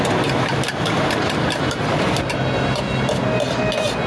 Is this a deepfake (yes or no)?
no